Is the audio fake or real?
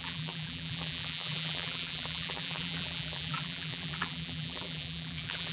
fake